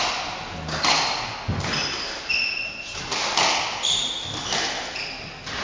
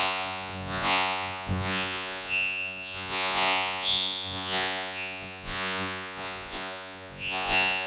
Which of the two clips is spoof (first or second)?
second